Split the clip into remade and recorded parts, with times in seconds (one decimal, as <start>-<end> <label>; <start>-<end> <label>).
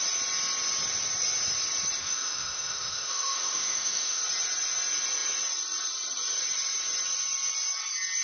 0.0-2.0 recorded; 2.0-4.2 remade; 4.2-8.2 recorded